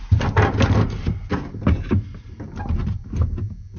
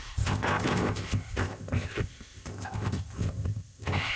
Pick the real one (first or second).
first